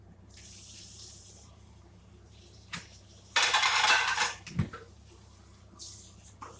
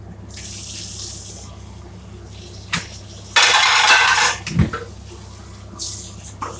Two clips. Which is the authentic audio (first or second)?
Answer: second